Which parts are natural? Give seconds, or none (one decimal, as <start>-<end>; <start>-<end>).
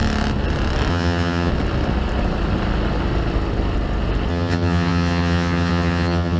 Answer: 0.0-0.9; 1.5-4.3